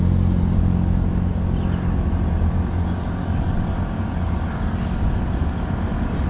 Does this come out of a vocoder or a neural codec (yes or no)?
no